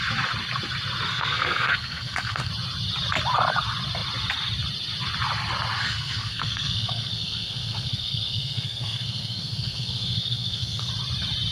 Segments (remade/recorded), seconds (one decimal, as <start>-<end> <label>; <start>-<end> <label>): 0.0-1.1 recorded; 1.1-2.5 remade; 2.5-5.8 recorded; 5.8-10.9 remade; 10.9-11.5 recorded